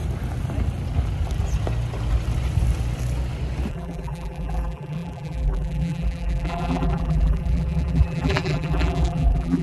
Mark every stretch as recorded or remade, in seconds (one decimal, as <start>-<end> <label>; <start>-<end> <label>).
0.0-3.7 recorded; 3.7-9.6 remade